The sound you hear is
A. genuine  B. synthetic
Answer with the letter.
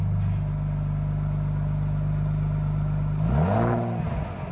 A